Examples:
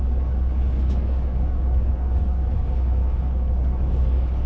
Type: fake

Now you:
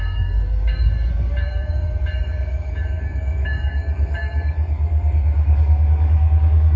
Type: fake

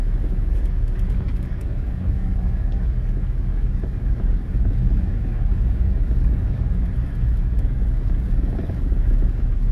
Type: fake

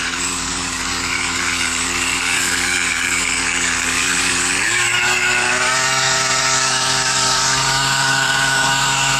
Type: fake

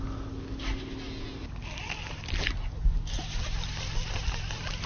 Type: real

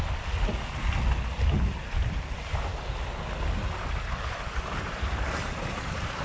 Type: real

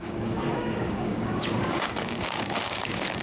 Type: fake